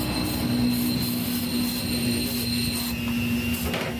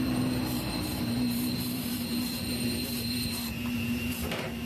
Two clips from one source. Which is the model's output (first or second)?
second